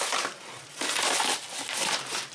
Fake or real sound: real